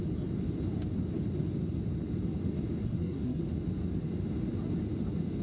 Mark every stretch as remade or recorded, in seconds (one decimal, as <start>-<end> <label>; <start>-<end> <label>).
0.0-2.8 recorded; 2.8-3.4 remade; 3.4-5.4 recorded